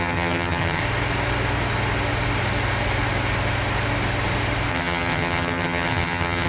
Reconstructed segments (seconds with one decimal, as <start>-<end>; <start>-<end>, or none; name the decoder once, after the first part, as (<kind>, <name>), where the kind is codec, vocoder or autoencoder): 0.0-0.8 (vocoder, HiFi-GAN); 4.7-6.5